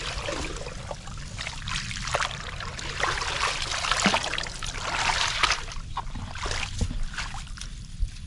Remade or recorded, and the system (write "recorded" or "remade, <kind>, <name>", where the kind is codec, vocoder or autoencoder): recorded